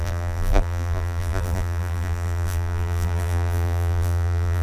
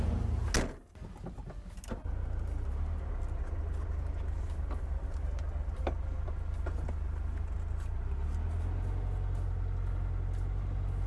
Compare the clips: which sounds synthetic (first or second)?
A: first